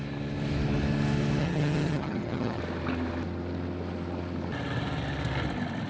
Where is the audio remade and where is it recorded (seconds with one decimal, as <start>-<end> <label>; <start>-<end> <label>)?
0.0-1.4 recorded; 1.4-2.6 remade; 2.6-5.9 recorded